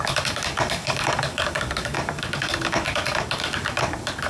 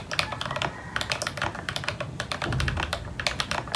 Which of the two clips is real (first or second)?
second